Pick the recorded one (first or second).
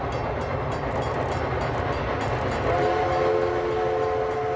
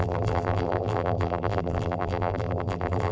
first